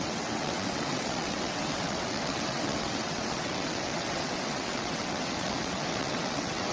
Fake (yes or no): yes